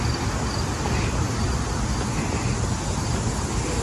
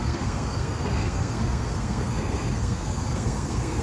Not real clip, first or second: second